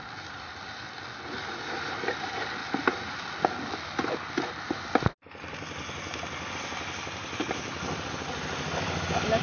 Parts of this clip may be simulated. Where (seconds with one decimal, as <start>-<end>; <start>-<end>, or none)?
none